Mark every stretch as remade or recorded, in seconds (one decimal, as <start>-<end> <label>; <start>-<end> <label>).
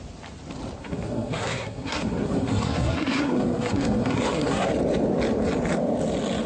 0.0-0.8 recorded; 0.8-4.7 remade; 4.7-6.5 recorded